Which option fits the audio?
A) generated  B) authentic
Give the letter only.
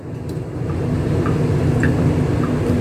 B